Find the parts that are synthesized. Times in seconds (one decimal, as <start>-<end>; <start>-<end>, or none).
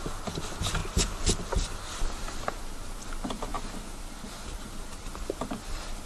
0.8-1.4